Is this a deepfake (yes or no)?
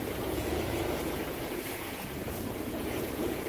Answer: yes